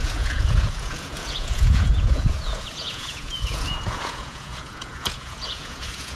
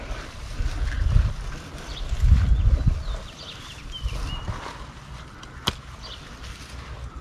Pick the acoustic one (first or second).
second